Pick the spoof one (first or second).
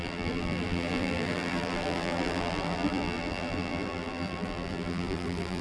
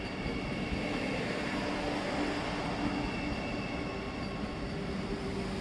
first